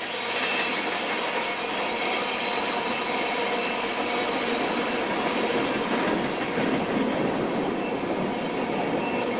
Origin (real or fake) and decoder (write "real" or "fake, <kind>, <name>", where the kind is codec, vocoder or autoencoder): real